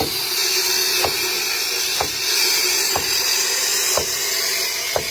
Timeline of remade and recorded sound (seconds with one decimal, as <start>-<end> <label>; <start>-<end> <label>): 0.0-5.1 recorded